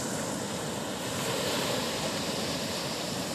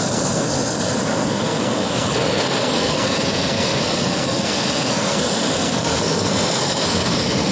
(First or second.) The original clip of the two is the first